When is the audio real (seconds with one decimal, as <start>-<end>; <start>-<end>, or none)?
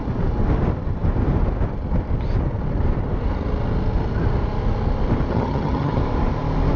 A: 0.0-5.3; 6.0-6.8